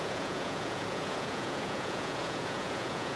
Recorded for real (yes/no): no